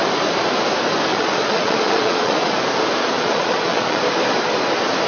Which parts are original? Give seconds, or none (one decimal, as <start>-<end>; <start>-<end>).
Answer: 0.0-1.1; 2.5-3.0; 4.0-5.1